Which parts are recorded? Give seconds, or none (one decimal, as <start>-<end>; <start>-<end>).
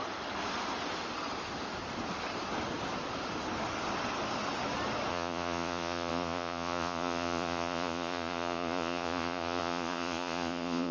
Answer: 0.0-5.1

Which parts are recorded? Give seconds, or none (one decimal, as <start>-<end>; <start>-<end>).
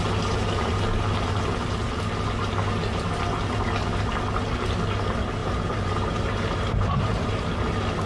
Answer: 0.0-5.4; 7.4-8.1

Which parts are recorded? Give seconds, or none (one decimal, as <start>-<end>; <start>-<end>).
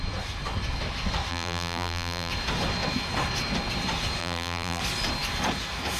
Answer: 0.0-1.3; 2.3-4.2; 4.8-6.0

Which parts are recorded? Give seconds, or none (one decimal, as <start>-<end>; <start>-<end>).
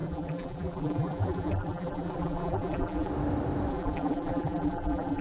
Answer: 3.1-3.7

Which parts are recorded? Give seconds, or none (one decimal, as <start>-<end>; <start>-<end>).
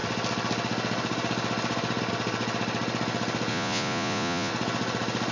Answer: 0.0-3.5; 4.5-5.3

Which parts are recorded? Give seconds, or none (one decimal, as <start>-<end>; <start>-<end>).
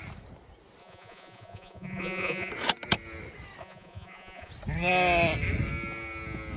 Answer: 0.0-0.8; 2.5-3.6; 4.5-6.6